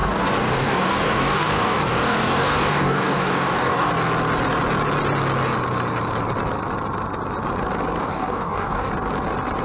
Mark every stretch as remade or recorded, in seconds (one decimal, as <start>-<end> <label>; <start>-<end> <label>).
0.0-3.9 remade; 3.9-8.0 recorded; 8.0-8.9 remade; 8.9-9.6 recorded